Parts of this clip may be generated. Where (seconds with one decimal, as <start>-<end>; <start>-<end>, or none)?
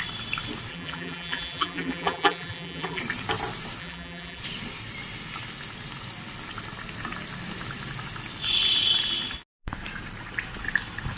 0.7-3.0; 3.8-4.4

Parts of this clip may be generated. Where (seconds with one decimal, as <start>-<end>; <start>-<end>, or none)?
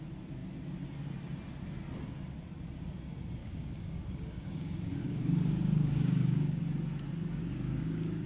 3.4-6.6; 7.4-8.3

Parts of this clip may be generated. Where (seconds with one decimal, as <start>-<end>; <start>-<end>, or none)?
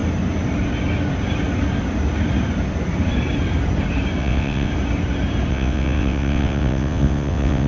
4.2-4.7; 5.5-7.7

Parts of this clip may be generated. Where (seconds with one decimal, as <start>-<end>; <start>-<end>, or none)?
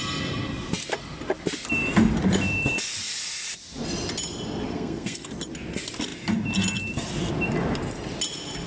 4.7-5.3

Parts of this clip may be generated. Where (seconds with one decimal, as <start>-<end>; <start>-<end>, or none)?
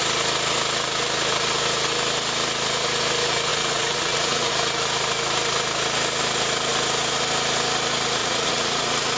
3.5-4.5; 8.2-9.2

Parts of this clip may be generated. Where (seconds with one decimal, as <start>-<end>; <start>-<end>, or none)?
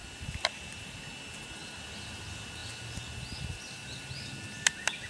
none